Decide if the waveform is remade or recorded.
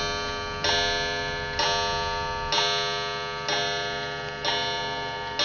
recorded